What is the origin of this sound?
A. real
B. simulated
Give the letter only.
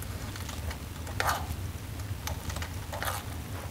A